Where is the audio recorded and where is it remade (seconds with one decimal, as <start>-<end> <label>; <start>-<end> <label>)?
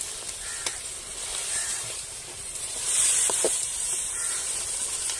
0.0-1.4 recorded; 1.4-4.5 remade; 4.5-5.2 recorded